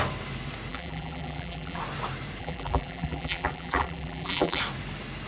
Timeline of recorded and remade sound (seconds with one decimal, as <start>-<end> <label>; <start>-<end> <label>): 0.0-0.7 recorded; 0.7-1.8 remade; 1.8-2.4 recorded; 2.4-4.6 remade; 4.6-5.3 recorded